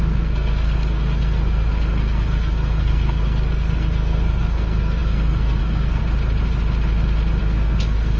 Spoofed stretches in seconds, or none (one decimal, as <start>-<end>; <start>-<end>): 0.0-6.0; 7.4-8.2